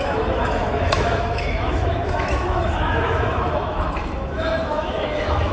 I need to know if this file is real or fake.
fake